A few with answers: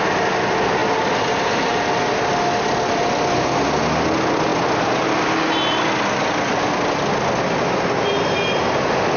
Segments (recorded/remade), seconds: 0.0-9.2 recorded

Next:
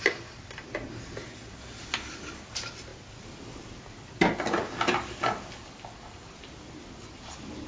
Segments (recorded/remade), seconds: 0.0-7.7 recorded

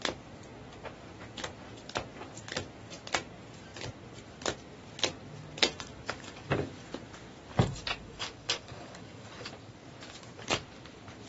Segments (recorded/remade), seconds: 0.0-5.6 recorded; 5.6-6.7 remade; 6.7-7.5 recorded; 7.5-9.5 remade; 9.5-11.3 recorded

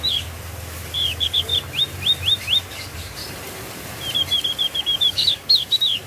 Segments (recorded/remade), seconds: 0.0-1.5 remade; 1.5-2.6 recorded; 2.6-3.2 remade; 3.2-4.8 recorded; 4.8-6.1 remade

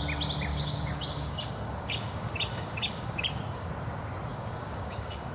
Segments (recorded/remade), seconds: 0.0-0.5 recorded; 0.5-3.7 remade; 3.7-4.3 recorded; 4.3-5.3 remade

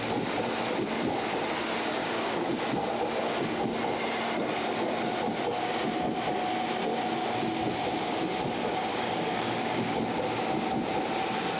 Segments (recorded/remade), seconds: 0.0-2.0 recorded; 2.0-2.6 remade; 2.6-8.9 recorded; 8.9-10.0 remade; 10.0-11.6 recorded